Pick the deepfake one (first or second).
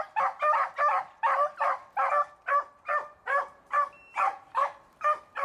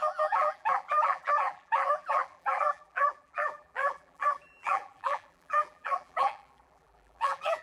second